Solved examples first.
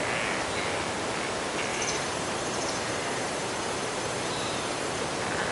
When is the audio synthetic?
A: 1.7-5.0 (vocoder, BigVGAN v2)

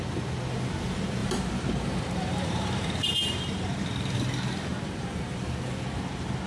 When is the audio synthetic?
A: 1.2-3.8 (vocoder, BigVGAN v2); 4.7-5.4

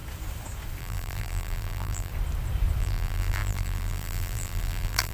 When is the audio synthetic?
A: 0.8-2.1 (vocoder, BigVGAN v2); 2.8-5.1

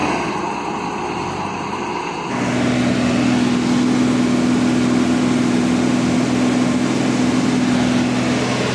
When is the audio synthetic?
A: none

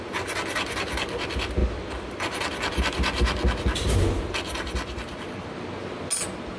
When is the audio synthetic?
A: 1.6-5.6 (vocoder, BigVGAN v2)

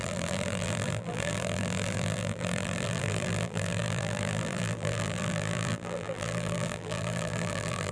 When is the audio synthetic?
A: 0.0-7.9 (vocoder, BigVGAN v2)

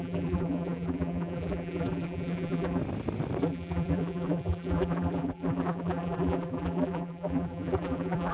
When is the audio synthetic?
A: 0.0-2.8 (vocoder, BigVGAN v2); 3.4-8.3

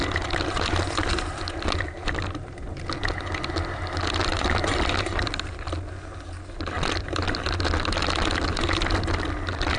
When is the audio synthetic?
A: 4.2-5.6 (vocoder, BigVGAN v2)